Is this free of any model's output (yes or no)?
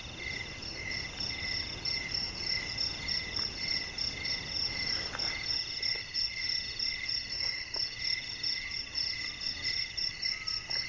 yes